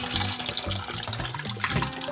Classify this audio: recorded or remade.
recorded